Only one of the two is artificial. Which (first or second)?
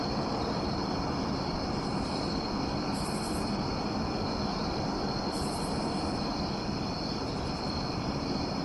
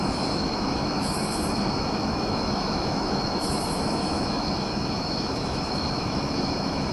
second